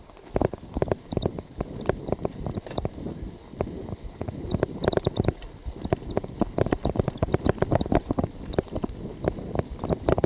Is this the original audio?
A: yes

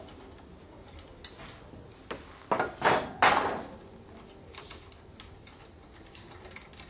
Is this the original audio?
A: yes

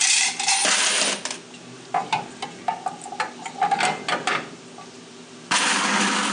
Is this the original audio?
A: yes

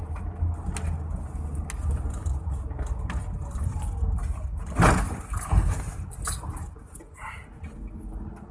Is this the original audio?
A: yes